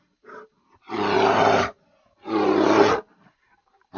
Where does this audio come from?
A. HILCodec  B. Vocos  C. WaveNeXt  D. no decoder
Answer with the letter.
D